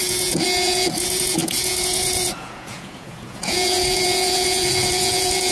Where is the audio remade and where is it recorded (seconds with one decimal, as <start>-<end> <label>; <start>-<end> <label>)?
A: 0.0-5.5 remade